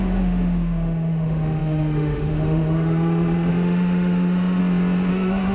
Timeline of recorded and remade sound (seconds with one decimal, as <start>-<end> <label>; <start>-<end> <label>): 0.0-4.6 remade; 4.6-5.1 recorded; 5.1-5.5 remade